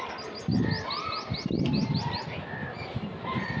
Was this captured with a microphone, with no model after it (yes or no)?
yes